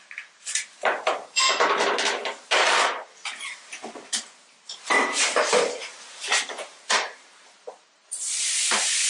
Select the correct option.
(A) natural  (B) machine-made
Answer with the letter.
B